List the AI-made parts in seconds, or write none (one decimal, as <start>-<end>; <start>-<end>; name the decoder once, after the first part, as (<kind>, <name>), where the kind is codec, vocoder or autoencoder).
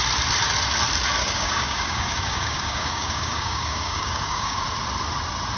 1.2-4.6 (codec, DAC)